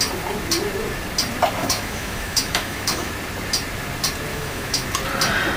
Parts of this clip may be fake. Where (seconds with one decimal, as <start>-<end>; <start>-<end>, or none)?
1.6-3.1; 4.3-4.9